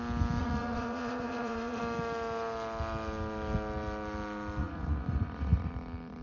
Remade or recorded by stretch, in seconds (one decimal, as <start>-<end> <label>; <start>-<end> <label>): 0.0-0.4 recorded; 0.4-1.8 remade; 1.8-4.6 recorded; 4.6-5.7 remade; 5.7-6.2 recorded